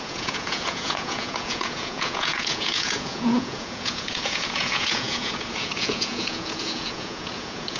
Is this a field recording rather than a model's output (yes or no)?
no